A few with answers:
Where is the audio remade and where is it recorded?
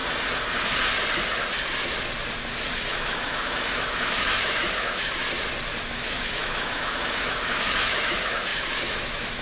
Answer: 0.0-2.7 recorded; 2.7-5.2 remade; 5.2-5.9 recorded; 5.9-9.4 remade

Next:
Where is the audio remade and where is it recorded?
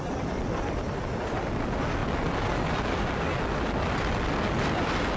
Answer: 0.0-5.2 recorded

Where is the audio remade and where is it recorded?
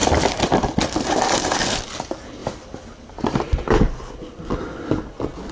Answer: 0.0-1.6 remade; 1.6-2.4 recorded; 2.4-4.1 remade; 4.1-5.5 recorded